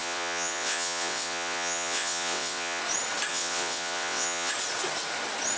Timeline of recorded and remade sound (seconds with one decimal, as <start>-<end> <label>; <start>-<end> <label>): 0.0-2.8 remade; 2.8-3.3 recorded; 3.3-4.5 remade; 4.5-5.6 recorded